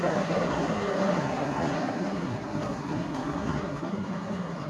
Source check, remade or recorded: remade